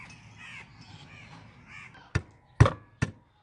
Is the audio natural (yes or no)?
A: yes